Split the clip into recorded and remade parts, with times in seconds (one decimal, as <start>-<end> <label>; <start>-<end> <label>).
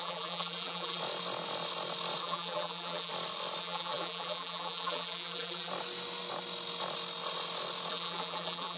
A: 0.0-1.0 remade; 1.0-2.2 recorded; 2.2-3.1 remade; 3.1-3.6 recorded; 3.6-5.7 remade; 5.7-7.9 recorded; 7.9-8.8 remade